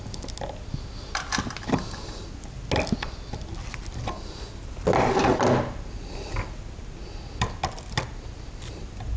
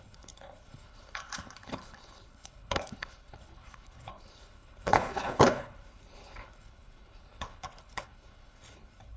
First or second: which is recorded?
first